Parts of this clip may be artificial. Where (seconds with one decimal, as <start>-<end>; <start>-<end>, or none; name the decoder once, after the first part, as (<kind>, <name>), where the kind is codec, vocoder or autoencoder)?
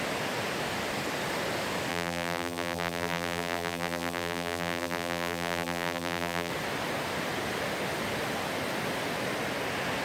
1.9-6.5 (vocoder, BigVGAN v2)